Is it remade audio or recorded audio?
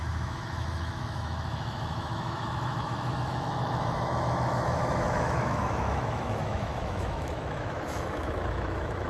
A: remade